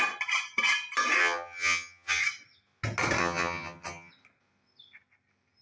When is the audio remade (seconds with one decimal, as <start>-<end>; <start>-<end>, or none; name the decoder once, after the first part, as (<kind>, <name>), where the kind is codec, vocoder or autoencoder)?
1.2-2.2 (vocoder, HiFi-GAN); 3.2-4.1